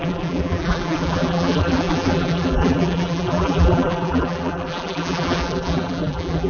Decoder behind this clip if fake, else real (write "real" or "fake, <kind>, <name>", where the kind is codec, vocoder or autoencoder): fake, vocoder, BigVGAN v2